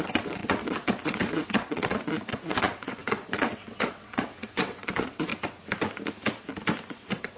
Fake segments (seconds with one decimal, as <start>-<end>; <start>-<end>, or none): 0.0-5.3; 6.9-7.4